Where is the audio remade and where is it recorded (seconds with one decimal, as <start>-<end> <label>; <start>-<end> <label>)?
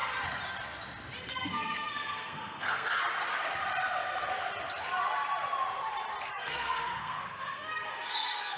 0.0-1.3 recorded; 1.3-3.0 remade; 3.0-6.3 recorded; 6.3-8.6 remade